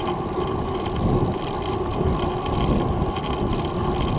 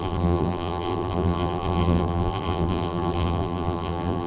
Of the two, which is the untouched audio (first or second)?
first